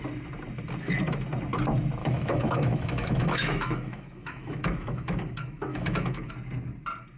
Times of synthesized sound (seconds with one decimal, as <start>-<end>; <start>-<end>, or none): 2.0-6.3